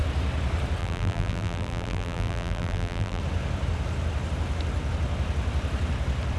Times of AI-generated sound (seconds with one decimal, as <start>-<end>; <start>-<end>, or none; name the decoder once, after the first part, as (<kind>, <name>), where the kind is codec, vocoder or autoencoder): 0.8-3.2 (vocoder, BigVGAN v2)